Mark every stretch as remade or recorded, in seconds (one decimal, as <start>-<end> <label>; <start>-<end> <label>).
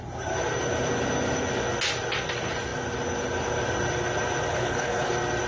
0.0-4.5 recorded; 4.5-5.1 remade; 5.1-5.5 recorded